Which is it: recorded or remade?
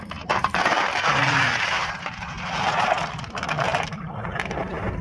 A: remade